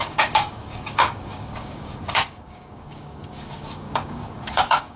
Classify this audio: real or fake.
fake